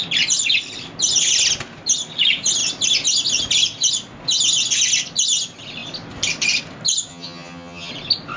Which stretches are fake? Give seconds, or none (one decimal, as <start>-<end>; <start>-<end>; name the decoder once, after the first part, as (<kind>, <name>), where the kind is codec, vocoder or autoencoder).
7.1-7.9 (vocoder, HiFi-GAN)